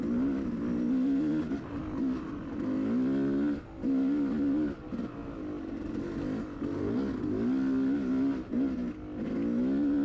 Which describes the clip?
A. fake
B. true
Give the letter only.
B